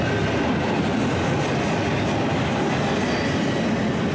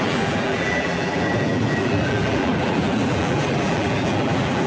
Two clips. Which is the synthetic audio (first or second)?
second